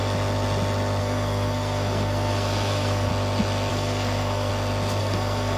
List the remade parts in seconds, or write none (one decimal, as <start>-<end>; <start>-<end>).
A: 1.0-3.1; 3.7-4.5; 5.0-5.6